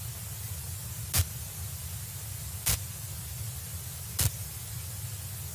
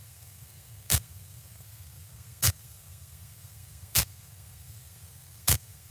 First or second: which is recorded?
first